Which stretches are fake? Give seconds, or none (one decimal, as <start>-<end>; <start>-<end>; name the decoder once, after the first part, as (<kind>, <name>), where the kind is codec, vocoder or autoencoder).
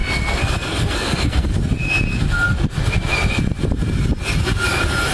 0.0-1.6 (codec, SNAC)